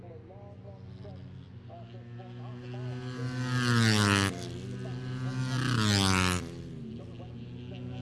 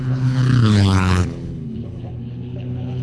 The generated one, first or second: second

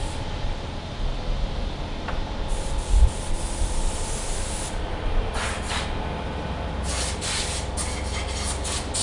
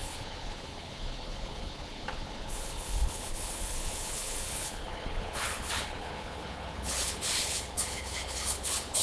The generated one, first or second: second